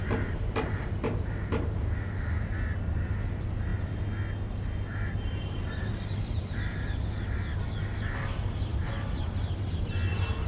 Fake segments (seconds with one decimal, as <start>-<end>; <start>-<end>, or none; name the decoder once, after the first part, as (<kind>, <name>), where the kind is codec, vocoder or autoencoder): 0.0-0.9 (vocoder, BigVGAN v2); 4.9-6.4; 8.7-9.7